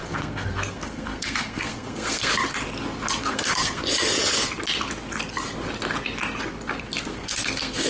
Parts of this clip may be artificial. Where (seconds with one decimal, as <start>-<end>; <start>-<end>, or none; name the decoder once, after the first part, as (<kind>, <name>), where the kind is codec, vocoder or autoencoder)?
0.0-2.3 (codec, SNAC); 3.2-3.8; 7.0-7.9